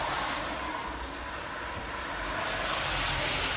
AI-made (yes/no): no